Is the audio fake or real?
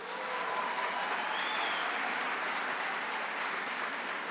real